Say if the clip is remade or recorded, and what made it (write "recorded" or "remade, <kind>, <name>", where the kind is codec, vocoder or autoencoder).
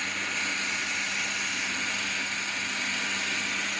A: recorded